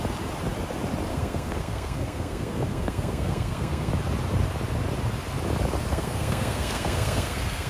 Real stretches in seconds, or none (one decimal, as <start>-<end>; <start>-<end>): 0.0-1.1; 3.9-5.9